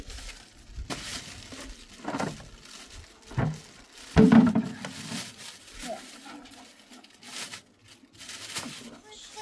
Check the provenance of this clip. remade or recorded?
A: recorded